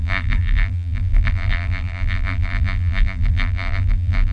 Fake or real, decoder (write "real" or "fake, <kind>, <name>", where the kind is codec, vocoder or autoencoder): fake, vocoder, BigVGAN v2